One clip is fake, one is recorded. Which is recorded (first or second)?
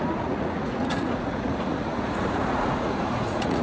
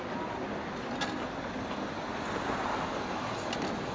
second